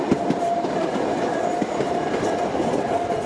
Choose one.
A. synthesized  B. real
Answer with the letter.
B